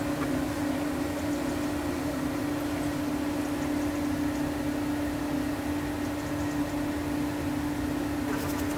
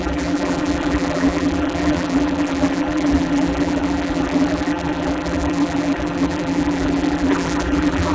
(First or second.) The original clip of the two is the first